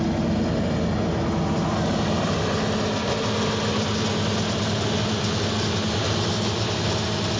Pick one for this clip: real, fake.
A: real